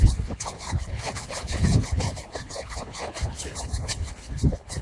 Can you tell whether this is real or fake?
fake